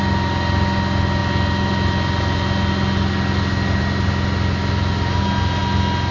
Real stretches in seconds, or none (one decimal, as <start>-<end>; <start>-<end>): 0.0-6.1